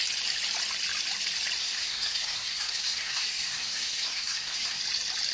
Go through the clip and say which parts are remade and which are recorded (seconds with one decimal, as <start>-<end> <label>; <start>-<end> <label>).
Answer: 0.0-1.6 recorded; 1.6-4.8 remade; 4.8-5.3 recorded